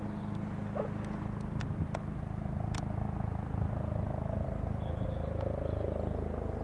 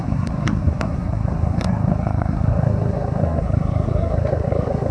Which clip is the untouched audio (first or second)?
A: first